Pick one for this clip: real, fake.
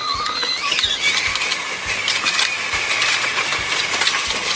real